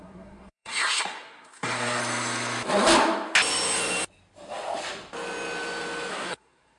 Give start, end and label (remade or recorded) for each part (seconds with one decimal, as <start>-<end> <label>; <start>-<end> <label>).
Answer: 0.0-2.0 remade; 2.0-6.1 recorded; 6.1-6.8 remade